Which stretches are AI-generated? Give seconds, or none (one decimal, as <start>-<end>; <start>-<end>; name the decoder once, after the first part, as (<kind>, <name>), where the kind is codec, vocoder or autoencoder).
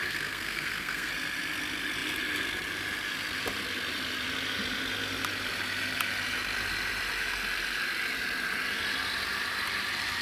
0.0-1.1 (codec, SNAC)